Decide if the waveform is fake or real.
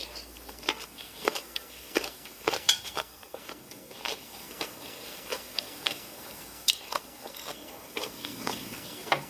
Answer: fake